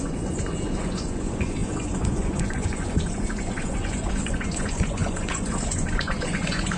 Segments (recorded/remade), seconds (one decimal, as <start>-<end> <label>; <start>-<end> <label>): 0.0-6.8 remade